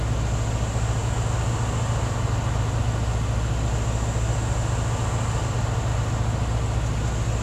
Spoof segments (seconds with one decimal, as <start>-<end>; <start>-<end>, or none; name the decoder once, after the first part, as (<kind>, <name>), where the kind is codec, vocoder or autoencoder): none